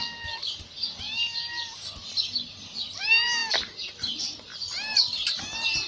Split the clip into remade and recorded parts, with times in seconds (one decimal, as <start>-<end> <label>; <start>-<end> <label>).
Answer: 0.0-5.9 recorded